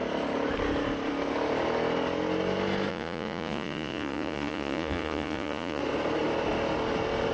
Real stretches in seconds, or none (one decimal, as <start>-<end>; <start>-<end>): 0.0-2.9; 5.8-7.3